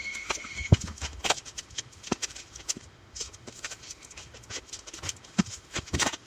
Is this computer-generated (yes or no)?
yes